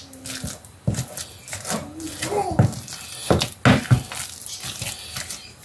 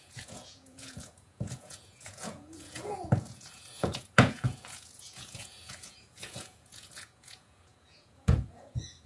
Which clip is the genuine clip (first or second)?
first